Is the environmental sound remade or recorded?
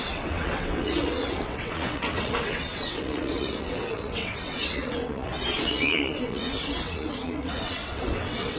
remade